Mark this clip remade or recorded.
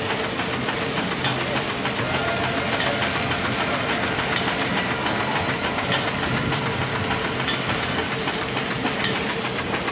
recorded